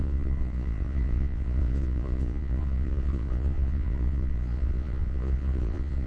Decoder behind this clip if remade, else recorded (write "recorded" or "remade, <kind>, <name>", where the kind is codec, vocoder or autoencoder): remade, vocoder, Vocos